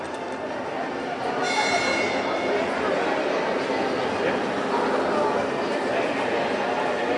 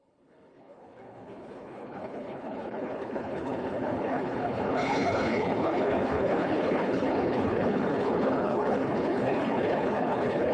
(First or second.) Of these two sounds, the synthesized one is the second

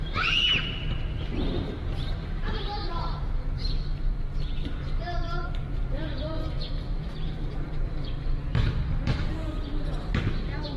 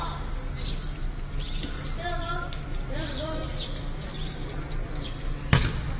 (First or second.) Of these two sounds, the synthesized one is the first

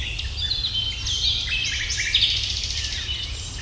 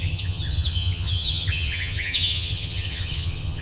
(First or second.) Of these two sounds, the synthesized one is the second